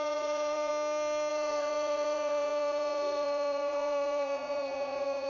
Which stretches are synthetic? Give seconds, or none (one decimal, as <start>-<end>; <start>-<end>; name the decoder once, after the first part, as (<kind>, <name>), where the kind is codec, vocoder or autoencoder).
0.0-0.7 (vocoder, Vocos); 1.3-5.3